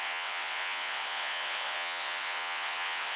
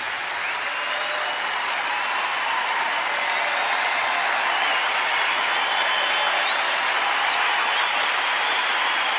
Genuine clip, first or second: second